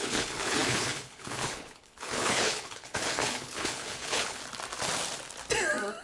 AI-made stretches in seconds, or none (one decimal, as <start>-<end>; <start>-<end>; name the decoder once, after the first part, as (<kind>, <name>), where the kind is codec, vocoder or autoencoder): 0.0-4.4 (codec, HILCodec)